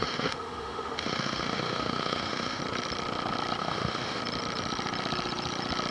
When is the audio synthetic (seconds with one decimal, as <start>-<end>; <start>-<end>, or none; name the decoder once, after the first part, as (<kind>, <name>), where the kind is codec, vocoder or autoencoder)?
0.0-2.6 (autoencoder, DAC-VAE); 3.6-4.2